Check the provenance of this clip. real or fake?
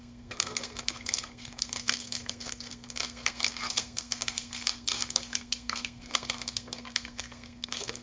fake